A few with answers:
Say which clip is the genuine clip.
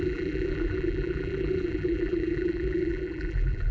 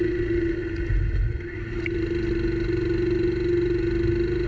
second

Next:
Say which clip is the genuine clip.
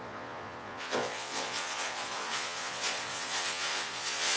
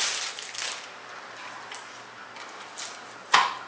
second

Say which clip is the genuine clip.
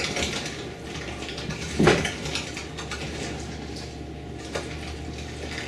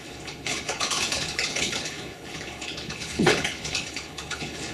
first